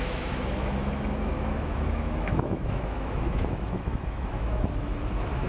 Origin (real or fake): fake